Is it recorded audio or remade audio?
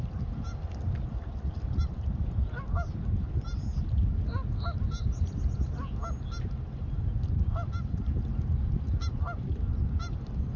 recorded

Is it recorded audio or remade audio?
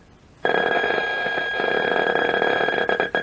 recorded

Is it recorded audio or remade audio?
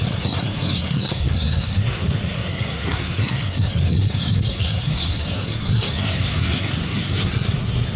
remade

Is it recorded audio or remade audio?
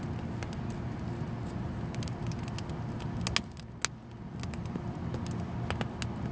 recorded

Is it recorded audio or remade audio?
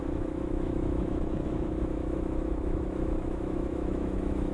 remade